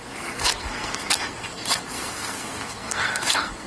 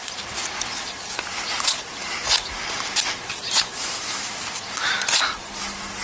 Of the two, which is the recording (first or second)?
second